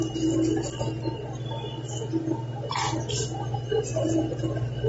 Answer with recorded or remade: recorded